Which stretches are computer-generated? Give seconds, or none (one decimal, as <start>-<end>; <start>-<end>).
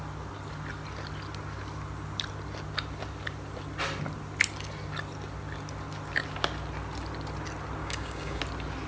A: 7.8-8.4